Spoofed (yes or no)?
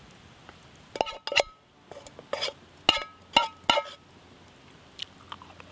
no